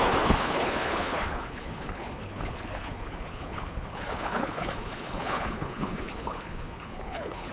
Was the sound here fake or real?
fake